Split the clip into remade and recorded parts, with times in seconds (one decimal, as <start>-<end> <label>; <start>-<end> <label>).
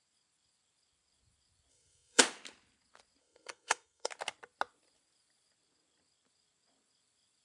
0.0-1.7 recorded; 1.7-2.2 remade; 2.2-3.2 recorded; 3.2-4.1 remade; 4.1-7.4 recorded